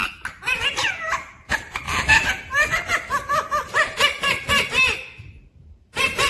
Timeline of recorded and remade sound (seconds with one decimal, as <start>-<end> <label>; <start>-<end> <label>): 0.0-1.0 recorded; 1.0-1.8 remade; 1.8-5.6 recorded; 5.6-6.3 remade